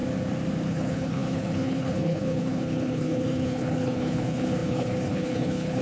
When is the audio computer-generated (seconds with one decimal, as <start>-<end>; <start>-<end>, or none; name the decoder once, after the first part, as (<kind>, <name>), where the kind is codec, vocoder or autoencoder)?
0.7-5.8 (codec, HILCodec)